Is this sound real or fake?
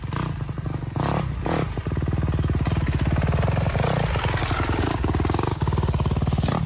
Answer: real